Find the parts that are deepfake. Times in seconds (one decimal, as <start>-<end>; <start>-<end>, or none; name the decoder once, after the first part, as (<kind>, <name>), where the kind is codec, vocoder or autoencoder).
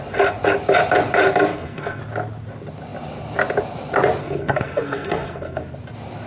1.5-2.0 (codec, SNAC); 4.2-5.6